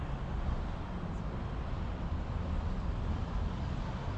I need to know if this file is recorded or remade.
recorded